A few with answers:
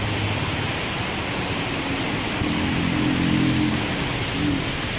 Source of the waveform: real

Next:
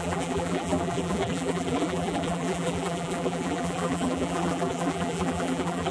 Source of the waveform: fake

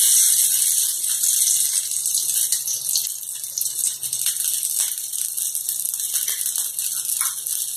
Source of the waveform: real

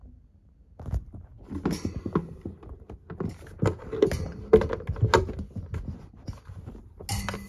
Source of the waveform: real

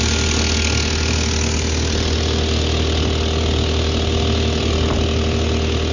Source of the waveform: real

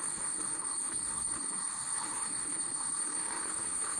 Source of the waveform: fake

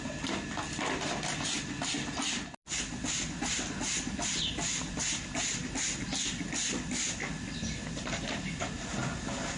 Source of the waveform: real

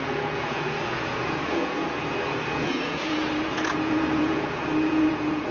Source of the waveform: fake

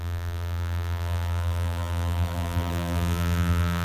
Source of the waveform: fake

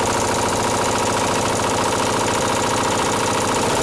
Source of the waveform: fake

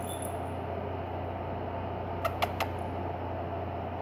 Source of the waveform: real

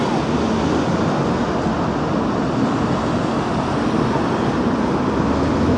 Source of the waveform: real